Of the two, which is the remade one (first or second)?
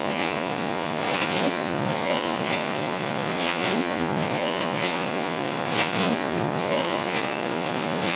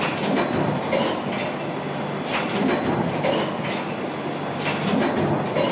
first